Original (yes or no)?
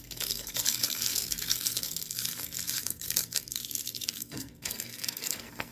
no